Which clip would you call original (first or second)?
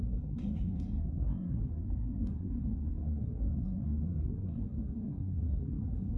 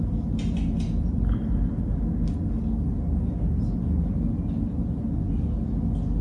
second